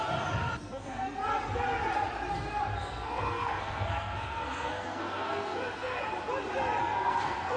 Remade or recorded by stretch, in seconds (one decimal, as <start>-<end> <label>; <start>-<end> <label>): 0.0-0.6 recorded; 0.6-1.2 remade; 1.2-2.7 recorded; 2.7-6.0 remade; 6.0-6.8 recorded; 6.8-7.6 remade